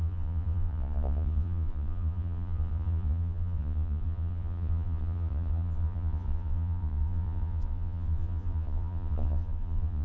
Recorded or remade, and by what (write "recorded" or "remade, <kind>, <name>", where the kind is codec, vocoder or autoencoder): remade, vocoder, Vocos